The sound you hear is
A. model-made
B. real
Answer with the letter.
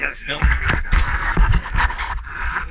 A